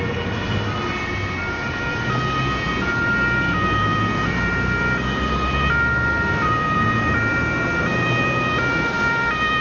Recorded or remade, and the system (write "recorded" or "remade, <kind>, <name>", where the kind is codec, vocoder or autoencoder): recorded